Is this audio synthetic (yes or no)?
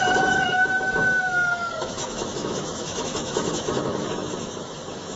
yes